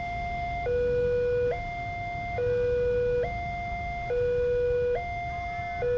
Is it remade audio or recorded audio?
recorded